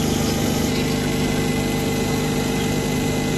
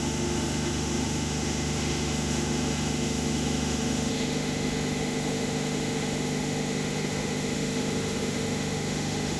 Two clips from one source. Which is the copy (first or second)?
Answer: second